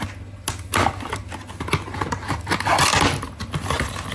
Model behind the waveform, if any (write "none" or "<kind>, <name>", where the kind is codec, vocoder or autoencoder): none